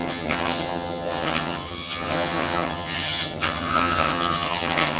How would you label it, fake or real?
fake